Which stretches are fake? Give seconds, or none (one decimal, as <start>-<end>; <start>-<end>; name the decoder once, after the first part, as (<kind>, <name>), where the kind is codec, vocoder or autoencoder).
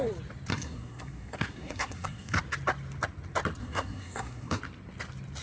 0.5-2.4 (codec, SNAC); 3.6-4.6